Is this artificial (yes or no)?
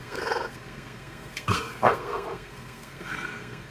yes